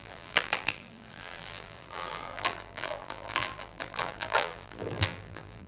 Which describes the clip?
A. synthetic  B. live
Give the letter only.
A